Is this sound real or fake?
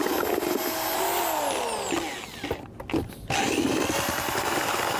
real